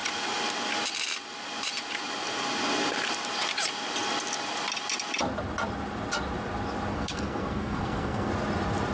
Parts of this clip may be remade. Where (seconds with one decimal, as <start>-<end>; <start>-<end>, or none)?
6.9-8.3